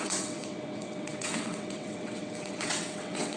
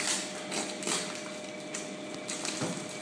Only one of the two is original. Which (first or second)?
second